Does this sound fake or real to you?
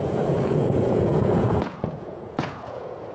fake